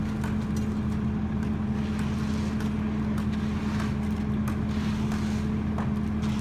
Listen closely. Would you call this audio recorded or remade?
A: recorded